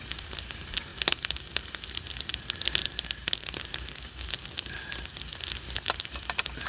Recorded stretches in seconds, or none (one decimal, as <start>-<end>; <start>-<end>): 0.0-6.7